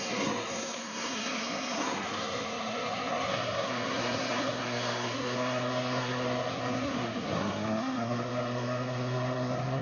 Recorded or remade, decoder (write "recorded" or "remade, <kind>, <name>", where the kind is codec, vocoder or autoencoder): remade, codec, SNAC